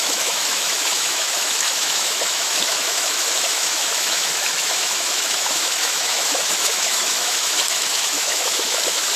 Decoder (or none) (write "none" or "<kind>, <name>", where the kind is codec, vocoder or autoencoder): autoencoder, DAC-VAE